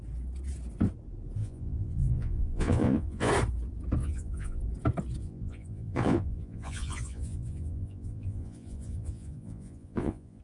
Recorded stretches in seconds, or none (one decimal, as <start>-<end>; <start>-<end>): 0.0-1.4; 3.3-4.0; 4.6-5.2